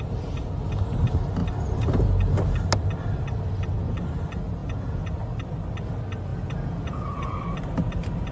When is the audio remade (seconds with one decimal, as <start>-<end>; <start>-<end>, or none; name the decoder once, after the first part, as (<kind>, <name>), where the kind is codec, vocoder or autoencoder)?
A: 4.6-5.1 (vocoder, Vocos); 6.3-7.4